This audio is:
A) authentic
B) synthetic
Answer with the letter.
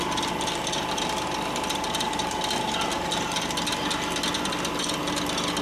A